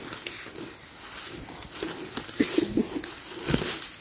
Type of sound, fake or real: real